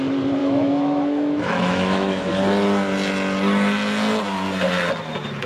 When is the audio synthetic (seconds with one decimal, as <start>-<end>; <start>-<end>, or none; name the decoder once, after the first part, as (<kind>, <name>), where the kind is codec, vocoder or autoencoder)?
0.4-2.2 (autoencoder, DAC-VAE)